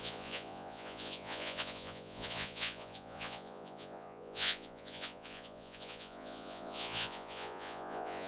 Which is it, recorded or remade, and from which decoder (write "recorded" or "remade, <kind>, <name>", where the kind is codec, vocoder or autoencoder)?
remade, vocoder, Vocos